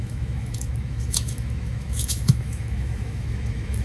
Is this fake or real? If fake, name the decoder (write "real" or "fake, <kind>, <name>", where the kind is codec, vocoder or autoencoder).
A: fake, autoencoder, DAC-VAE